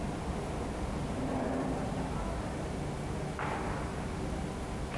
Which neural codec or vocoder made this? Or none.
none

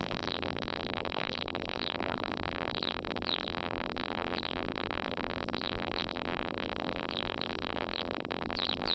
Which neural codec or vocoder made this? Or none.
vocoder, BigVGAN v2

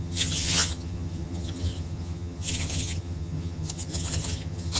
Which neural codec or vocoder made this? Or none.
vocoder, HiFi-GAN